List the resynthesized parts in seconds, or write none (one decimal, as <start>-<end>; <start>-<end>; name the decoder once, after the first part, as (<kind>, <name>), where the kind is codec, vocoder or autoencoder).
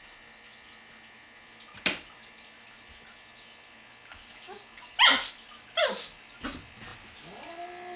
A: none